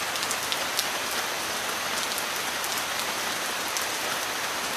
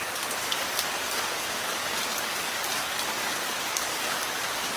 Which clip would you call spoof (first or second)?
second